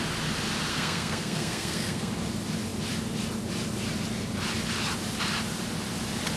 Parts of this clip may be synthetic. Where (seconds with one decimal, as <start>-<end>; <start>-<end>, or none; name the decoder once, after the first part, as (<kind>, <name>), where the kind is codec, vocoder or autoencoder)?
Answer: 0.7-2.1 (codec, SNAC)